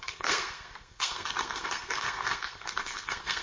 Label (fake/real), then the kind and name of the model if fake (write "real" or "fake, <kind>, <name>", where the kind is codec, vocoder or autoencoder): fake, codec, SNAC